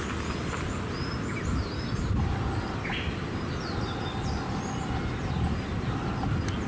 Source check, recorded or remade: recorded